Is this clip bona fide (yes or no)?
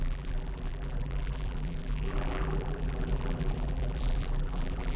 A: no